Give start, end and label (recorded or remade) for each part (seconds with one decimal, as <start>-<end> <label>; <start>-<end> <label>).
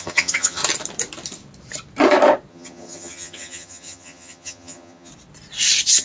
0.0-0.6 remade; 0.6-2.5 recorded; 2.5-5.1 remade; 5.1-6.0 recorded